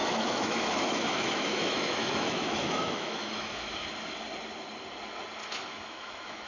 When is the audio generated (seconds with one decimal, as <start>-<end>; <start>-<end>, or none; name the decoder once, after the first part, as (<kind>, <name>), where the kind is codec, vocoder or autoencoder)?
0.0-3.9 (autoencoder, DAC-VAE); 5.4-6.5